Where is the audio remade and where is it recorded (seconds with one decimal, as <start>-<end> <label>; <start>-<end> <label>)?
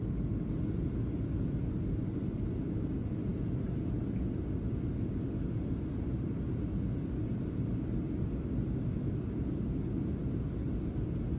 0.0-11.4 recorded